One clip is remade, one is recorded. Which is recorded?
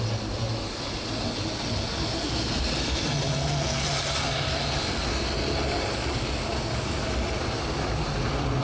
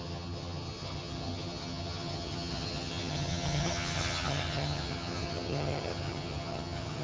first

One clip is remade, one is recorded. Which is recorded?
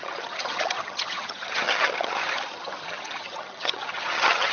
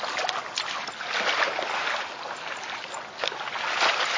second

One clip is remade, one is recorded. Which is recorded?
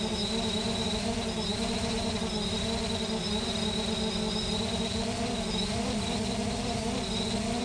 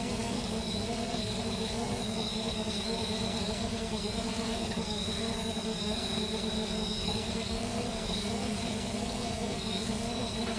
first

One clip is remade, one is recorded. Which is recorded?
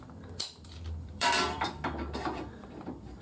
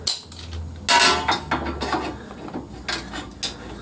second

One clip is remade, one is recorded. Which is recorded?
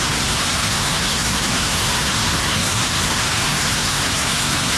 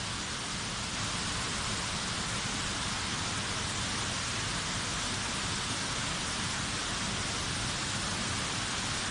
second